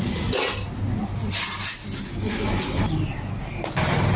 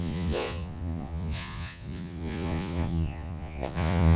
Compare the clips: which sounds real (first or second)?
first